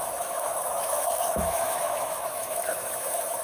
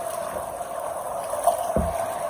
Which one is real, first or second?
second